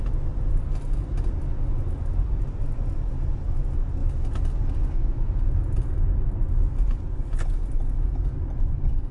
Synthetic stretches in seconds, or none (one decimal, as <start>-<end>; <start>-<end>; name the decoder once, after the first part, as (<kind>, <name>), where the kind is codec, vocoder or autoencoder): none